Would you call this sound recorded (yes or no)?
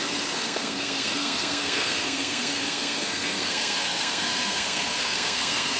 no